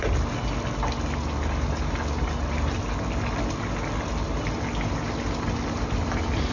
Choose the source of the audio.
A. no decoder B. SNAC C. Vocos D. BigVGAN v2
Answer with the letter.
A